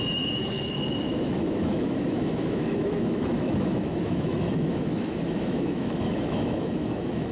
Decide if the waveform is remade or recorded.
remade